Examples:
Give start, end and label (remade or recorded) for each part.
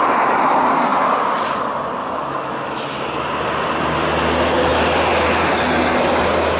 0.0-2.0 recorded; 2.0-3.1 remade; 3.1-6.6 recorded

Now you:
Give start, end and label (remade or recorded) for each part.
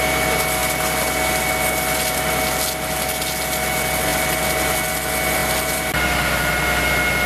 0.0-7.3 recorded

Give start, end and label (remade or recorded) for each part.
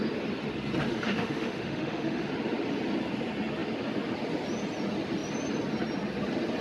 0.0-0.9 recorded; 0.9-2.3 remade; 2.3-6.6 recorded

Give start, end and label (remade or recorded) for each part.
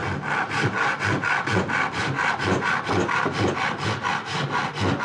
0.0-5.0 recorded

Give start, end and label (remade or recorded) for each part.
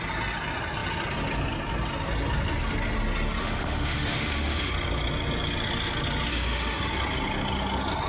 0.0-3.4 recorded; 3.4-4.7 remade; 4.7-6.3 recorded; 6.3-6.9 remade; 6.9-8.1 recorded